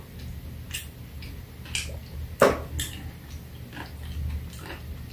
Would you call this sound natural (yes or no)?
yes